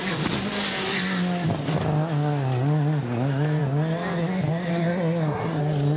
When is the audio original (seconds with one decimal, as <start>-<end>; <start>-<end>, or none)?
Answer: 0.0-4.7; 5.6-6.0